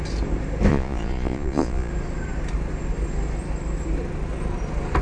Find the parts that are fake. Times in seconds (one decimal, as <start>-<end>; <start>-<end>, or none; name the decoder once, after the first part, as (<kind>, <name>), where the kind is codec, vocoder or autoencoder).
0.7-1.9 (vocoder, Vocos)